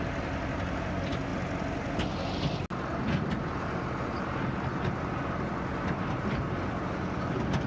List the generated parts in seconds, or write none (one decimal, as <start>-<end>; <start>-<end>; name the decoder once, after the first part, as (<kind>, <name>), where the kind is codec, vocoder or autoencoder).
none